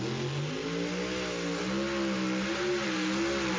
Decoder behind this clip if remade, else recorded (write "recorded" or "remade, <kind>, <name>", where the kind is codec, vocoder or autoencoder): recorded